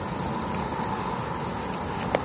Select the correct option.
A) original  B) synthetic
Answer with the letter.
A